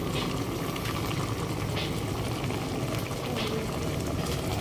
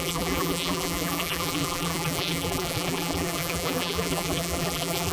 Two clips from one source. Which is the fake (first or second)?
second